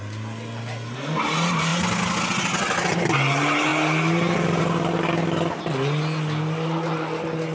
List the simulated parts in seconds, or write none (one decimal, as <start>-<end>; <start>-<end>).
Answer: none